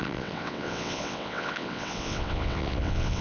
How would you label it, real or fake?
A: fake